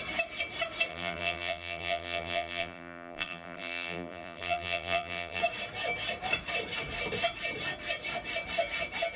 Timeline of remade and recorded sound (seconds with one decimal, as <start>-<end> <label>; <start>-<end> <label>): 0.0-0.9 recorded; 0.9-5.4 remade; 5.4-9.2 recorded